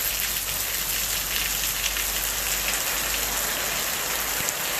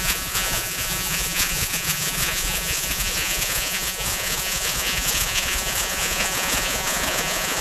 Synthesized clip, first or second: second